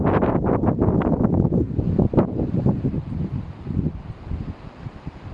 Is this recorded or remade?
remade